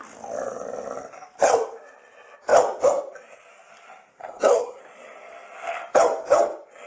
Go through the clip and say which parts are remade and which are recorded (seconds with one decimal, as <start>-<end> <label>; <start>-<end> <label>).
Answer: 0.0-4.2 recorded; 4.2-4.8 remade; 4.8-6.9 recorded